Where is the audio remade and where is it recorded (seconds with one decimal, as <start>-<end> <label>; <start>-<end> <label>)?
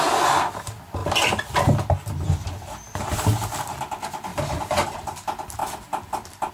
0.0-4.3 recorded; 4.3-5.0 remade; 5.0-5.6 recorded; 5.6-6.5 remade